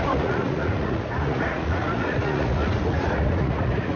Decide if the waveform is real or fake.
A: fake